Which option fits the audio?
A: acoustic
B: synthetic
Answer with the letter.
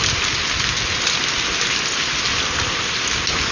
A